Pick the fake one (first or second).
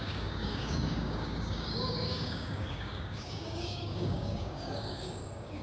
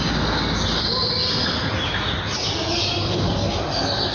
first